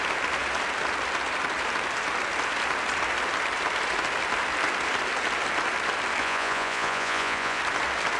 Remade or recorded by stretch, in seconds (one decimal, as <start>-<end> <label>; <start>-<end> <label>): 0.0-6.2 recorded; 6.2-7.6 remade; 7.6-8.2 recorded